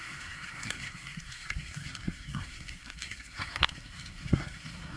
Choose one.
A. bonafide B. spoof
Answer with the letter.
B